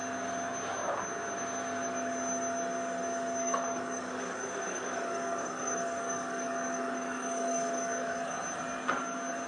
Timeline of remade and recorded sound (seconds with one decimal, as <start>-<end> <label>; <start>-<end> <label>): 0.0-3.4 recorded; 3.4-8.4 remade; 8.4-9.5 recorded